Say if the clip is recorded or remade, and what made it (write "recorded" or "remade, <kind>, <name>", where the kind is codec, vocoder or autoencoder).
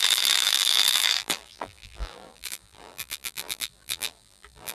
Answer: remade, vocoder, BigVGAN v2